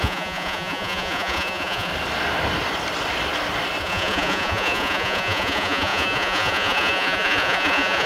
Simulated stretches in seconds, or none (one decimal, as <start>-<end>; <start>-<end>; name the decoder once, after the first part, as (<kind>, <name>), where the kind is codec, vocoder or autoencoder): 0.0-1.9 (vocoder, Vocos); 3.8-8.1